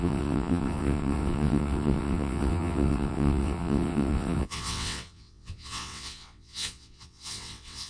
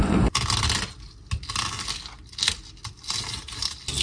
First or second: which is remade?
first